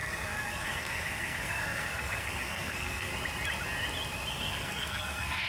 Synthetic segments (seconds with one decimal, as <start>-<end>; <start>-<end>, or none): 0.0-3.1; 4.3-5.5